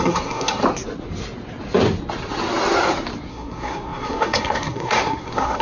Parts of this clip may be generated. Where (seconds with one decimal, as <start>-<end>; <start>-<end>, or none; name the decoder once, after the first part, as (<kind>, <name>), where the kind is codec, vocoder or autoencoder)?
0.0-0.6 (codec, SNAC); 3.3-5.6